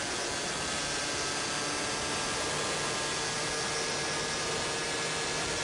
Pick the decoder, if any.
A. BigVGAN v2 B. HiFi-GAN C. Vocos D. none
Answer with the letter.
D